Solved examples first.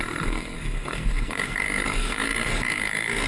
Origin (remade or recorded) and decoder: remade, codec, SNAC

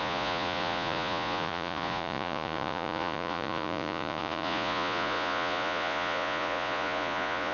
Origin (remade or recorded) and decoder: remade, vocoder, Vocos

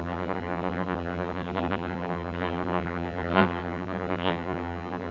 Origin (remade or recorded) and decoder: remade, vocoder, BigVGAN v2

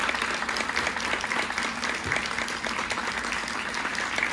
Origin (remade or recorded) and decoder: recorded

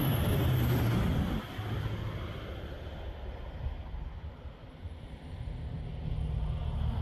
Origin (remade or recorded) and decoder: recorded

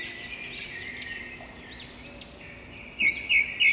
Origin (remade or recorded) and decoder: recorded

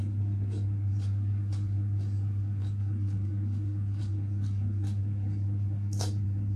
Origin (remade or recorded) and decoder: remade, codec, DAC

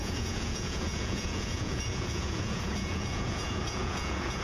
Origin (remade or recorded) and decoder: remade, vocoder, Vocos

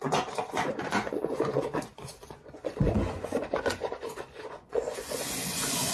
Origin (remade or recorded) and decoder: remade, vocoder, Vocos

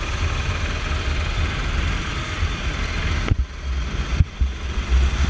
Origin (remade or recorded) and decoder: recorded